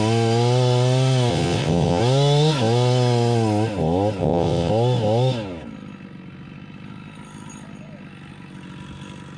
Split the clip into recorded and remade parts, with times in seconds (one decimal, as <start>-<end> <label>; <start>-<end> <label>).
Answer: 0.0-1.3 recorded; 1.3-2.0 remade; 2.0-4.2 recorded; 4.2-4.7 remade; 4.7-9.4 recorded